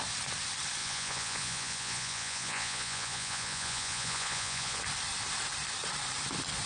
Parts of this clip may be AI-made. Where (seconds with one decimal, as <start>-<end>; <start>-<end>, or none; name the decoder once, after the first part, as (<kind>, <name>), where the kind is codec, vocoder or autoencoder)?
0.8-4.8 (vocoder, Vocos)